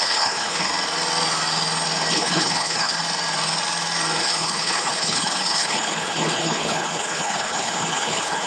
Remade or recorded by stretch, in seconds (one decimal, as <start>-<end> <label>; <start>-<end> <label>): 0.0-0.7 remade; 0.7-2.1 recorded; 2.1-3.0 remade; 3.0-4.2 recorded; 4.2-8.5 remade